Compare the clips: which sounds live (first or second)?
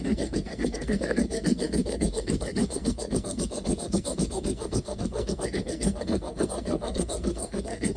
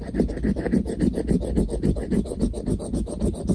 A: second